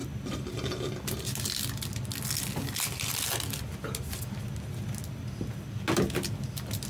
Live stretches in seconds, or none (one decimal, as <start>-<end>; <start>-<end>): 0.0-6.9